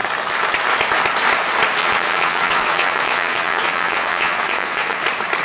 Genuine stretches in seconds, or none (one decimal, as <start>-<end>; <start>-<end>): 0.0-1.8; 5.0-5.4